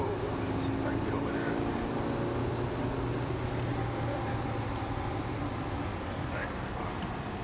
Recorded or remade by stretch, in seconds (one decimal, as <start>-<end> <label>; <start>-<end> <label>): 0.0-1.4 recorded; 1.4-2.0 remade; 2.0-5.9 recorded; 5.9-6.8 remade; 6.8-7.4 recorded